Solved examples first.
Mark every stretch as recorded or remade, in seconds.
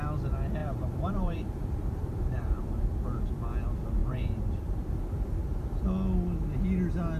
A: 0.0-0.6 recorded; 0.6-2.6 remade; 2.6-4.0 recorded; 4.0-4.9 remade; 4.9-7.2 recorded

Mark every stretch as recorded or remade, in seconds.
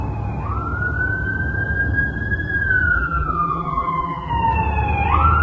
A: 0.0-2.9 recorded; 2.9-4.3 remade; 4.3-5.4 recorded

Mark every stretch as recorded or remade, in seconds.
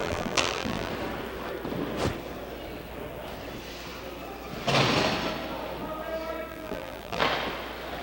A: 0.0-0.9 remade; 0.9-6.5 recorded; 6.5-7.2 remade; 7.2-8.0 recorded